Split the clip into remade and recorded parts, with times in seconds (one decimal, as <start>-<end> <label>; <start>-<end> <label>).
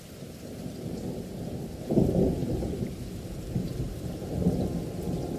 0.0-2.4 recorded; 2.4-4.2 remade; 4.2-5.4 recorded